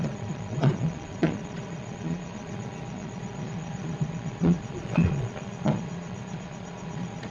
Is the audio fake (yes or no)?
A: yes